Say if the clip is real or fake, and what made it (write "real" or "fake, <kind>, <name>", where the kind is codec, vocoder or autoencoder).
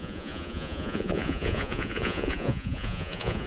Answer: fake, vocoder, Vocos